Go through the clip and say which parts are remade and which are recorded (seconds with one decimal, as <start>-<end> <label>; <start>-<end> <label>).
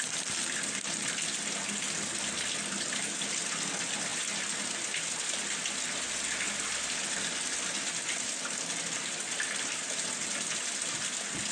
0.0-11.5 recorded